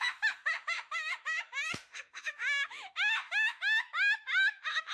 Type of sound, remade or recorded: remade